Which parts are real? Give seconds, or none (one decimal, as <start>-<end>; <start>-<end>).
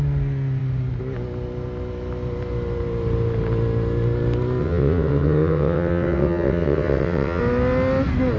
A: 0.0-4.6; 7.4-8.4